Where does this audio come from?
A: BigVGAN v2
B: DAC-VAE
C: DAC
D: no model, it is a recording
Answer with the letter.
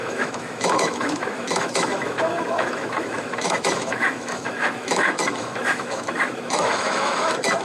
B